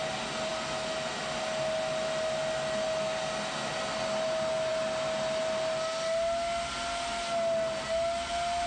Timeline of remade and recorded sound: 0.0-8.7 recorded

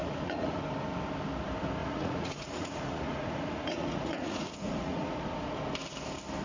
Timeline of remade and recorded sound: 0.0-0.6 remade; 0.6-1.8 recorded; 1.8-5.6 remade; 5.6-6.4 recorded

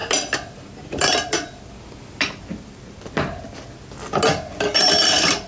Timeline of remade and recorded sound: 0.0-2.6 remade; 2.6-4.8 recorded; 4.8-5.5 remade

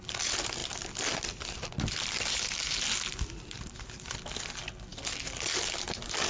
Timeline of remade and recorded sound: 0.0-0.6 recorded; 0.6-4.4 remade; 4.4-4.9 recorded; 4.9-6.3 remade

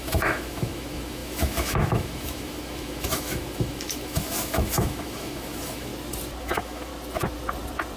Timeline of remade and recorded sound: 0.0-5.9 remade; 5.9-6.4 recorded; 6.4-6.9 remade; 6.9-8.0 recorded

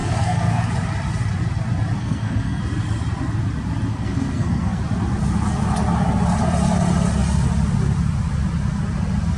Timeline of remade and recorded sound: 0.0-0.7 remade; 0.7-2.0 recorded; 2.0-2.6 remade; 2.6-3.9 recorded; 3.9-4.8 remade; 4.8-9.4 recorded

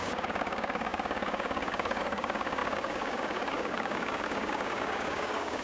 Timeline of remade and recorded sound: 0.0-5.6 remade